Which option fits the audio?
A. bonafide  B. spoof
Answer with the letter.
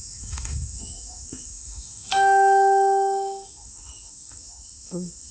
B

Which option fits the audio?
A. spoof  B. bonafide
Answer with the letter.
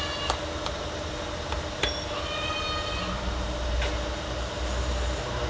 B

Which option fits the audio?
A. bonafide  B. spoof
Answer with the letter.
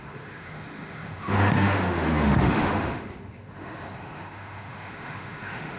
B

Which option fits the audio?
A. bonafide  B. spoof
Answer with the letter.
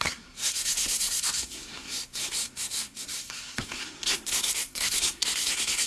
B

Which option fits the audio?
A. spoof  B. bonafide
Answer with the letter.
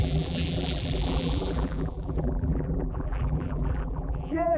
A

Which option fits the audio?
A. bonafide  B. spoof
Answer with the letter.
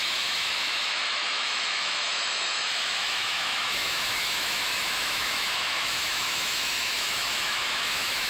B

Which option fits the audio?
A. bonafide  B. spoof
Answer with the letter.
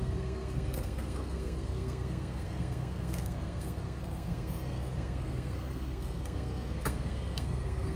B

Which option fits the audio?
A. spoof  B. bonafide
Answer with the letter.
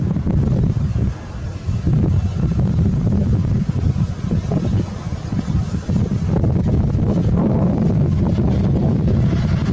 B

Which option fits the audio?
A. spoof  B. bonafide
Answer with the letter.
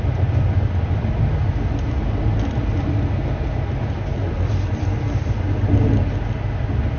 B